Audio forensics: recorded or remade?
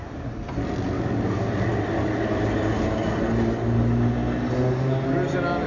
recorded